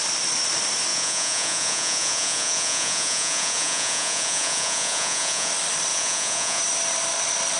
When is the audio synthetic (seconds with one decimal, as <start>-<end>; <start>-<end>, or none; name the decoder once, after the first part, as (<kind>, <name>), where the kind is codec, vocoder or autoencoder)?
0.9-5.5 (vocoder, Vocos); 5.9-6.6